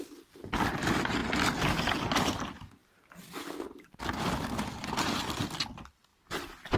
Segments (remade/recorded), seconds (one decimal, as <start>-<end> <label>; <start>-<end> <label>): 0.0-6.8 recorded